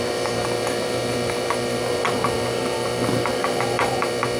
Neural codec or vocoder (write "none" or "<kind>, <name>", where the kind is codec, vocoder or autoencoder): vocoder, BigVGAN v2